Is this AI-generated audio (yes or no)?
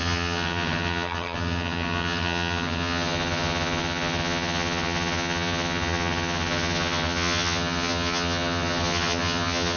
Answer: yes